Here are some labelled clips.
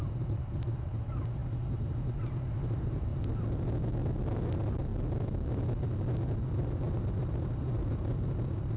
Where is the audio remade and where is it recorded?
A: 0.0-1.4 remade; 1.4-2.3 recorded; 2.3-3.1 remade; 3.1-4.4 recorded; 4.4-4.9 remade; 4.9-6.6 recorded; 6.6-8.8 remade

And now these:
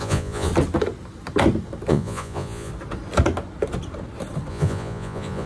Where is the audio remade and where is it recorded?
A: 0.0-0.5 remade; 0.5-1.9 recorded; 1.9-2.7 remade; 2.7-4.5 recorded; 4.5-5.5 remade

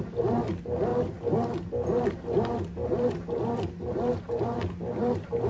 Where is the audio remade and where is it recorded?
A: 0.0-5.5 recorded

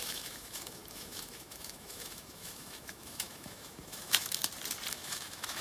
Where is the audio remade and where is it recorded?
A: 0.0-4.4 remade; 4.4-4.9 recorded; 4.9-5.6 remade

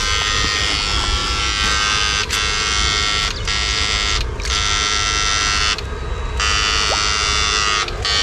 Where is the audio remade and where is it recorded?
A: 0.0-8.2 recorded